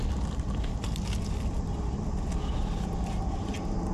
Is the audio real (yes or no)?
yes